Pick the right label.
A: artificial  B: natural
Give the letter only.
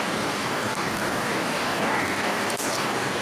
A